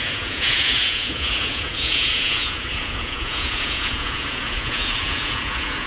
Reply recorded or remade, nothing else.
remade